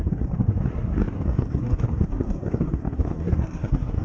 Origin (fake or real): fake